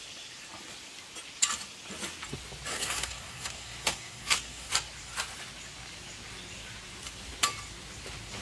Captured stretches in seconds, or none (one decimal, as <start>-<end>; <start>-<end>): 0.0-2.7; 4.7-8.4